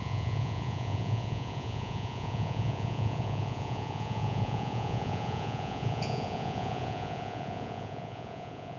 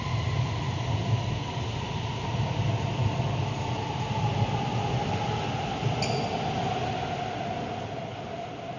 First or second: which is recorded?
second